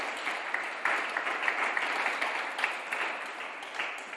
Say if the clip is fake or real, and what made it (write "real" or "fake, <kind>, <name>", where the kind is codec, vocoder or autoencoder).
real